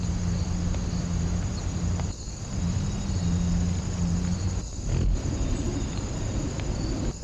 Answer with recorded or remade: recorded